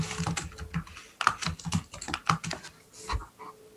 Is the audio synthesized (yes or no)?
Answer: no